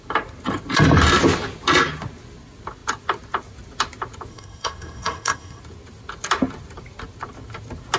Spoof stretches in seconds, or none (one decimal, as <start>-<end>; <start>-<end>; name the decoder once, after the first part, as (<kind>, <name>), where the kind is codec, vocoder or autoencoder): 4.3-5.6 (codec, SNAC)